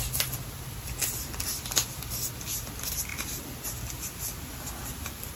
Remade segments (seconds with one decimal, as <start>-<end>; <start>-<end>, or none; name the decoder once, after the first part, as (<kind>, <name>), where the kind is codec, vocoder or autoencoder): none